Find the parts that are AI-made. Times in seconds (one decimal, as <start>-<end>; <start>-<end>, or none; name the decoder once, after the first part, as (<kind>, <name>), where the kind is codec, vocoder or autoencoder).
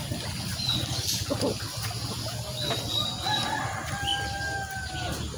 none